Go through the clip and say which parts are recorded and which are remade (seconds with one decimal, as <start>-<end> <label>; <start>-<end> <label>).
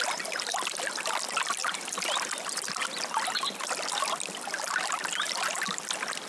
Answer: 0.0-6.3 recorded